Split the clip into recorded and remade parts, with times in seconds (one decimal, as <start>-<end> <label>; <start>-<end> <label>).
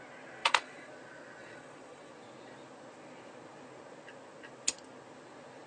0.0-0.4 recorded; 0.4-0.9 remade; 0.9-1.4 recorded; 1.4-2.1 remade; 2.1-5.7 recorded